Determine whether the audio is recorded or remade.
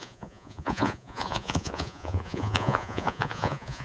remade